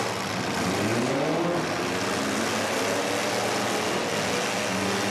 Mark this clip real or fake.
real